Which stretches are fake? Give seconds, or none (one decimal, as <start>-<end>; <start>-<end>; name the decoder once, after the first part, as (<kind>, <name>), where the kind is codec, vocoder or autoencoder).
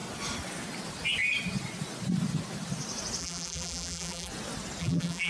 3.2-4.3 (vocoder, BigVGAN v2); 4.8-5.3